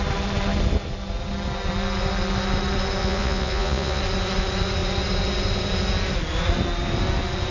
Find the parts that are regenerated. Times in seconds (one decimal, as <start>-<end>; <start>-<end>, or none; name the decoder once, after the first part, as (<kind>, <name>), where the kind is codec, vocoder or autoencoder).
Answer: 3.0-4.0 (vocoder, Vocos)

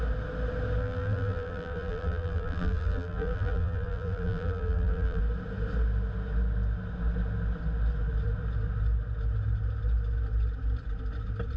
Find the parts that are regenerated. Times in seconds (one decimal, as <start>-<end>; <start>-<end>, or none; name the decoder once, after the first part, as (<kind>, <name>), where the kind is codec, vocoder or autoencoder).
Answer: 0.8-5.2 (vocoder, BigVGAN v2)

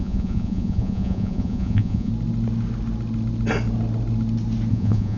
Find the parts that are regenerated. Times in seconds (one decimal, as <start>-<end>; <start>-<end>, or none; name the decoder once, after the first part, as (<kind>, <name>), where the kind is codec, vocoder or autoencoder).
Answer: 0.0-2.1 (vocoder, Vocos); 4.7-5.2